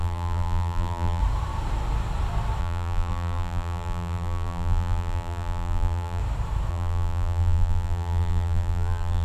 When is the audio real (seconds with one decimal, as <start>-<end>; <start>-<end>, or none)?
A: 1.2-2.6; 6.2-6.7